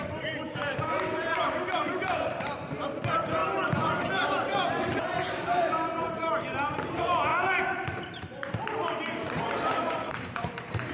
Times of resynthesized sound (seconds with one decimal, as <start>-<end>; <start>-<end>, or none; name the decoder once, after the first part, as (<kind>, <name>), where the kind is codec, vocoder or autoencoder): 0.0-7.3 (vocoder, BigVGAN v2); 9.0-10.9